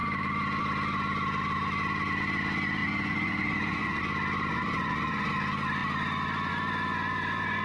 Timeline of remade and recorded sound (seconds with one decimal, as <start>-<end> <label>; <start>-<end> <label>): 0.0-2.8 recorded; 2.8-4.0 remade; 4.0-4.5 recorded; 4.5-5.3 remade; 5.3-7.6 recorded